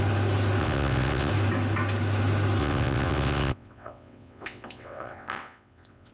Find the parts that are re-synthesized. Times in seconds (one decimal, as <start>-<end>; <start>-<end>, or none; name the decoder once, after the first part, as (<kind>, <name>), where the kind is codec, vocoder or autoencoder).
0.6-1.3 (vocoder, WaveNeXt); 2.6-6.1